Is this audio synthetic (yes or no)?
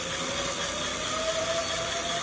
no